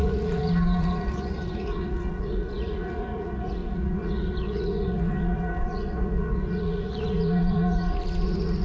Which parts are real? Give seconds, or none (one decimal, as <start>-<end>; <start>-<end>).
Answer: none